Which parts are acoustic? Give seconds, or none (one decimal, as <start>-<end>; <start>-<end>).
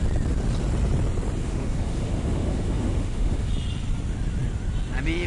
0.0-1.4; 3.5-5.3